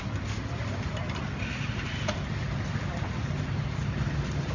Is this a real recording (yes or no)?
yes